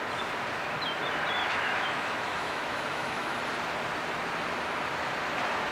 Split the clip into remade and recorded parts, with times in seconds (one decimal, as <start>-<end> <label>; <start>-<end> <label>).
0.0-1.4 recorded; 1.4-3.4 remade; 3.4-5.7 recorded